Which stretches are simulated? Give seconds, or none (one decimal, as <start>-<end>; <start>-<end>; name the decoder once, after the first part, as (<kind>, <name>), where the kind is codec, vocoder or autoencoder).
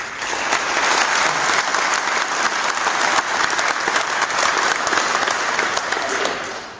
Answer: none